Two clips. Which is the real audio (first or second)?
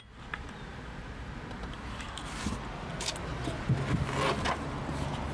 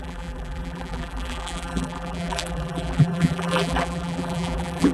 first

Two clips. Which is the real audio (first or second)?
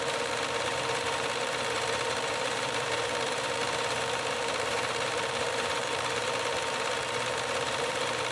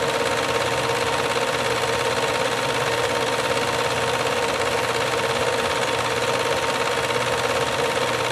second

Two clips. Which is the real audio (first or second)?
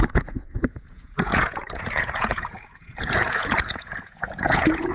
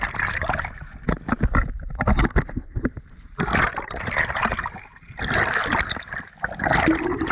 second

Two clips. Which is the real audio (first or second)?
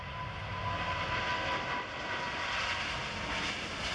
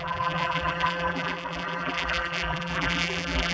first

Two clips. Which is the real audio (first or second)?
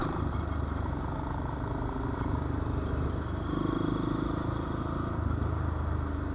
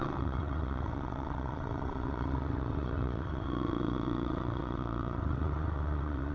first